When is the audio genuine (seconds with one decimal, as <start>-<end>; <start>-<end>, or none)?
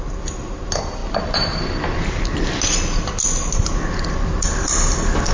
0.0-5.3